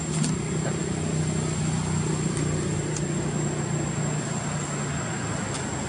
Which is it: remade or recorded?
recorded